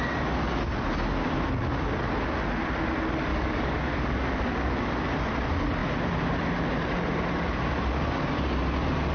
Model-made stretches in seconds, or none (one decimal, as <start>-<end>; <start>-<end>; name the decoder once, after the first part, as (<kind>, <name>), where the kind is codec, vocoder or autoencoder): 3.3-5.0 (codec, DAC)